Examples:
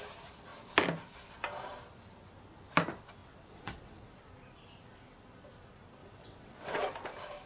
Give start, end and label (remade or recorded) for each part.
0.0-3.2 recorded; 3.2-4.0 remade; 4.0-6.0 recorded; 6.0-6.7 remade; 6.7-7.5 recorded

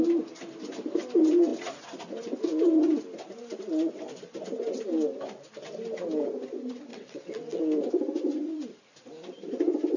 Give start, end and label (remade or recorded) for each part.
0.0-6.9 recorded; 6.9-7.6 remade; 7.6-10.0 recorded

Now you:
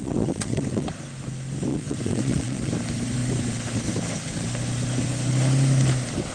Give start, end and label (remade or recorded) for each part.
0.0-0.9 remade; 0.9-1.7 recorded; 1.7-2.7 remade; 2.7-6.3 recorded

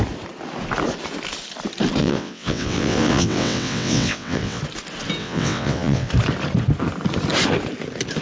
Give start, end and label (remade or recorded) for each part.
0.0-2.0 recorded; 2.0-4.6 remade; 4.6-5.2 recorded; 5.2-6.1 remade; 6.1-8.2 recorded